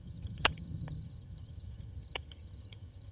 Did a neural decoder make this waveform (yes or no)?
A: yes